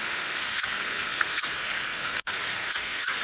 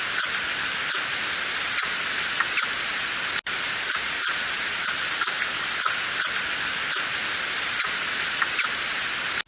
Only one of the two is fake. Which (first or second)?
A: first